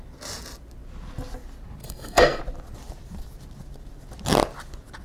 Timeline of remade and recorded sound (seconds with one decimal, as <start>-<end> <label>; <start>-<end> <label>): 0.0-1.8 recorded; 1.8-2.4 remade; 2.4-5.0 recorded